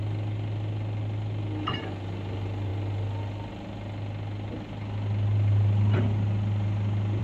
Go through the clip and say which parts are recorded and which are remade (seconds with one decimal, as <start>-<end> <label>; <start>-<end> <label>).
0.0-7.2 recorded